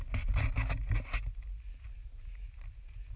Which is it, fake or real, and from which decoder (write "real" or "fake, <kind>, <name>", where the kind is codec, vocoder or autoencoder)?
real